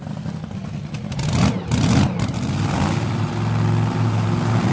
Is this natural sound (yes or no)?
yes